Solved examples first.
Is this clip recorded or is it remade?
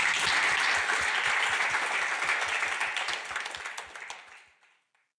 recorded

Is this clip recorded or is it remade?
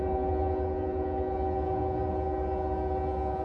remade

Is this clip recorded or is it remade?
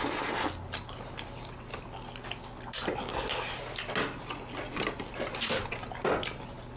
recorded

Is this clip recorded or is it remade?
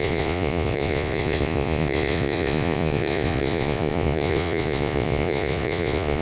remade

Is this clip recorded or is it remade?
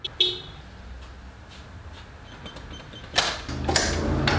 recorded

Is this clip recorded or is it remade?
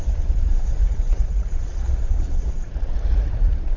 remade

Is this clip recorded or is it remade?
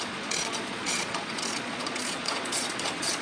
remade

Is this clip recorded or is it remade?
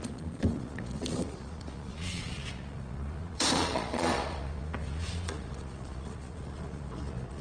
remade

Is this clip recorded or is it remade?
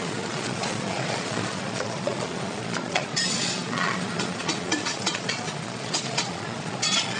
remade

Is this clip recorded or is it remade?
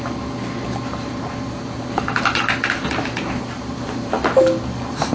recorded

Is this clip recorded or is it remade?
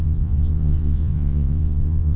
remade